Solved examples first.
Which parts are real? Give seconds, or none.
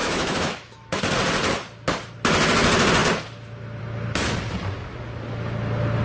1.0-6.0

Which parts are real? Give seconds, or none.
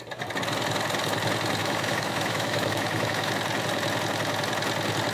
0.0-1.6; 3.3-5.1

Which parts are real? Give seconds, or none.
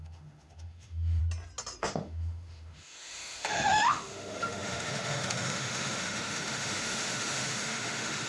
1.2-1.8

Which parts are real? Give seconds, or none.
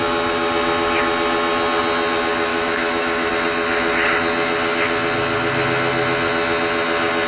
0.0-2.5; 3.3-7.3